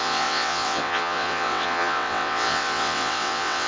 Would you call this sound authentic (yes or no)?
no